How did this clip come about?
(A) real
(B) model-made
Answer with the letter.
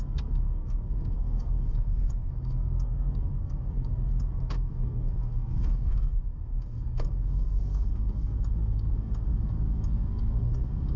B